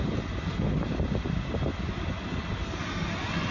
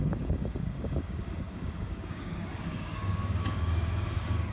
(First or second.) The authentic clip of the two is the first